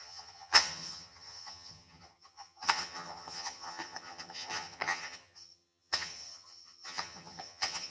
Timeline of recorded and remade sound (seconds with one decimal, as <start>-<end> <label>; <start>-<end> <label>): 0.0-7.9 remade